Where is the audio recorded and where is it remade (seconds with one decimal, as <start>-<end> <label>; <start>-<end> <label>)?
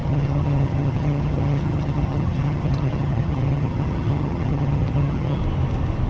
0.0-5.4 remade; 5.4-6.1 recorded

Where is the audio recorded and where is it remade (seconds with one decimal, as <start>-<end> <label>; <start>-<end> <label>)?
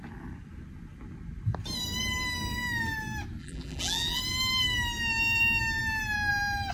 0.0-3.4 recorded; 3.4-4.2 remade; 4.2-6.7 recorded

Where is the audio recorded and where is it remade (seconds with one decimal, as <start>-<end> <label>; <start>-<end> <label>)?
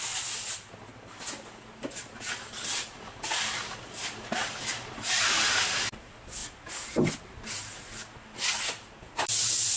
0.0-9.8 recorded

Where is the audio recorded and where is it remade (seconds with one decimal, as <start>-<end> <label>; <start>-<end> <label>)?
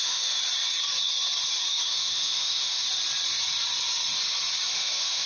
0.0-0.4 remade; 0.4-1.8 recorded; 1.8-2.8 remade; 2.8-4.7 recorded; 4.7-5.3 remade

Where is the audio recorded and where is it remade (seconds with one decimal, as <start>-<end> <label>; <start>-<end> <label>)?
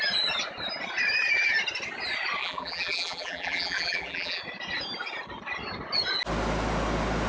0.0-2.4 recorded; 2.4-4.4 remade; 4.4-7.3 recorded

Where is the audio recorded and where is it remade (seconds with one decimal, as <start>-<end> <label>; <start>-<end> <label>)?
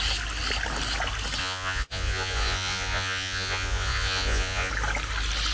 0.0-1.4 recorded; 1.4-4.7 remade; 4.7-5.5 recorded